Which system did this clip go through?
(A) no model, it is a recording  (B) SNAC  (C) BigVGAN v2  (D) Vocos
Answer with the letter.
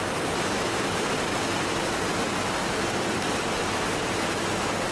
A